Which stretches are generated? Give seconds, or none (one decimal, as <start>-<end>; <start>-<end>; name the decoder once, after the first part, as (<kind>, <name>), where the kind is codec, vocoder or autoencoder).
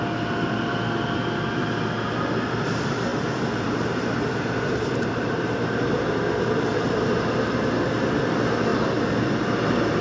3.1-6.1 (vocoder, BigVGAN v2); 6.7-7.5